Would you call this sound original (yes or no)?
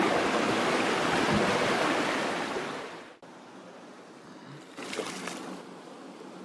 yes